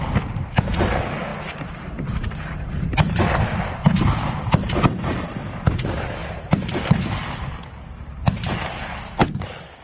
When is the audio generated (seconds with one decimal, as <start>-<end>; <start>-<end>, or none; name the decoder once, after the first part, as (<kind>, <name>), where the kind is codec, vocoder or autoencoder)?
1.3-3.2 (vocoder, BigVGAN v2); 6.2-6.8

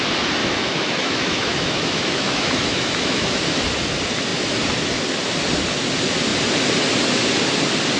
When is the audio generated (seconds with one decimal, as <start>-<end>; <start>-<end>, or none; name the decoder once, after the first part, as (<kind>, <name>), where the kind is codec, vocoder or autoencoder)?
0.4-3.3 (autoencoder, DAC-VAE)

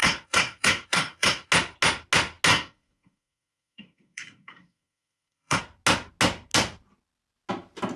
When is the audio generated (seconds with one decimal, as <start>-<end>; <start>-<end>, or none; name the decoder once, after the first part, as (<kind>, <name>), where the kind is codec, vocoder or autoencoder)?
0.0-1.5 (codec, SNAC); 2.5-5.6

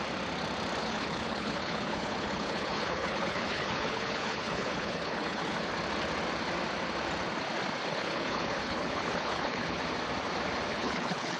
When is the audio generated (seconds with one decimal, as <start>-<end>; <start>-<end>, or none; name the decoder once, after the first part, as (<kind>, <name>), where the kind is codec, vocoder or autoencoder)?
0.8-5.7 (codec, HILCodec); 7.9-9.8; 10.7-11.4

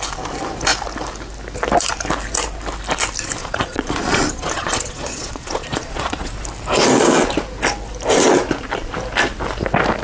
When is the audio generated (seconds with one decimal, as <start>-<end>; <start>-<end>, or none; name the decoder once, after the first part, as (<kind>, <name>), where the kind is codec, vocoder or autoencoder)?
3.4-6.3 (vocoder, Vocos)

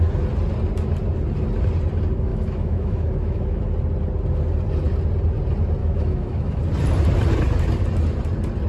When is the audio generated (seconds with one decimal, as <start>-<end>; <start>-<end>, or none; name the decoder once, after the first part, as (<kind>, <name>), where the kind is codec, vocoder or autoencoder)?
2.3-3.6 (autoencoder, DAC-VAE); 5.8-6.6